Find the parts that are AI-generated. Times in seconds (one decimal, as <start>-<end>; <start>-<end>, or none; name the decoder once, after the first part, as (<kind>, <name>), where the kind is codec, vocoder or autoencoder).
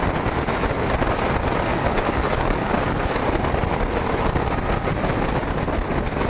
1.7-3.5 (codec, DAC)